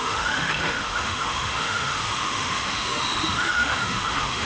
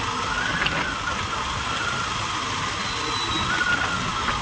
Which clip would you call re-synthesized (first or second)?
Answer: first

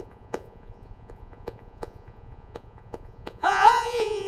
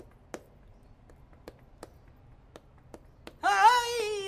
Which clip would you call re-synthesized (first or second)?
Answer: first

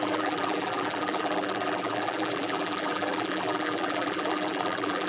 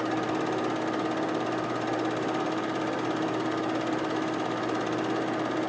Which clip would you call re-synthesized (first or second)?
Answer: first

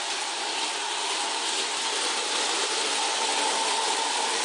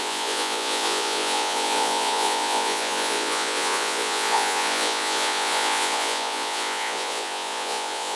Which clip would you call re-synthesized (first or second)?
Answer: second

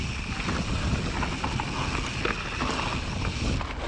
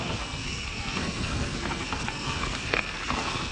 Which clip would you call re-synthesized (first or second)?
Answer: second